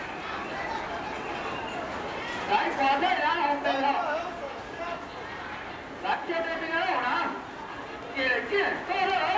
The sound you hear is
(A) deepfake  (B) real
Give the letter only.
B